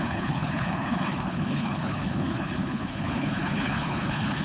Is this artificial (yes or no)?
yes